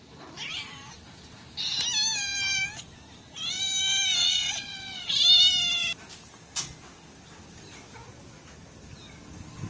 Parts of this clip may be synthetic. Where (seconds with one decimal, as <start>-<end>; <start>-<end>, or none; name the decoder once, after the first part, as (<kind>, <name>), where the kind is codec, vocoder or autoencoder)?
4.2-5.1 (vocoder, WaveNeXt)